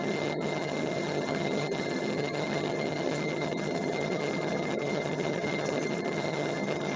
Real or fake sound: fake